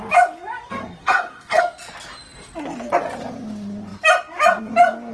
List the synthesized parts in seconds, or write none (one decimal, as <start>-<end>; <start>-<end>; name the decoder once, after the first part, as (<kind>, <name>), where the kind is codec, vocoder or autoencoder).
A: 1.0-1.6 (codec, SNAC)